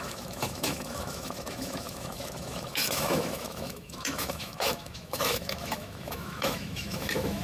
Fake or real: fake